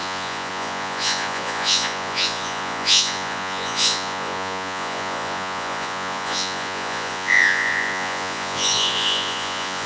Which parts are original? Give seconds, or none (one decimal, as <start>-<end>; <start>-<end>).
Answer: none